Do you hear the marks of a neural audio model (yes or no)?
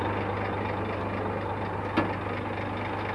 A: no